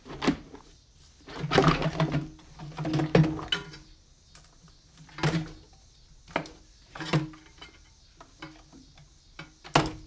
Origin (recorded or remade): recorded